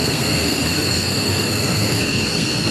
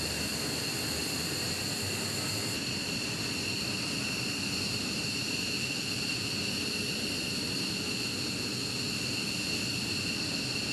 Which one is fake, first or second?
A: first